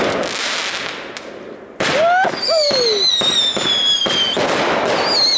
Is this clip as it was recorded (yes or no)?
yes